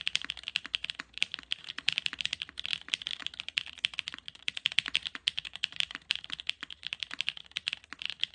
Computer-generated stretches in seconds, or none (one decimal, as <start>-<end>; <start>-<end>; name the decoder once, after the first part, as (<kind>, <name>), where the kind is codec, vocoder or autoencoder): none